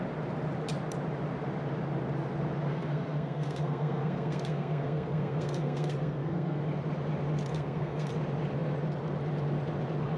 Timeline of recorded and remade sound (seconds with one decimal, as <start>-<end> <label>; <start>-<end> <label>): 0.0-2.7 recorded; 2.7-6.6 remade; 6.6-7.5 recorded; 7.5-8.1 remade; 8.1-10.2 recorded